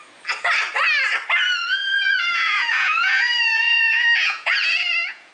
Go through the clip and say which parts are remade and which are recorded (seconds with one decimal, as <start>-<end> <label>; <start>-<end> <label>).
0.0-1.7 recorded; 1.7-5.3 remade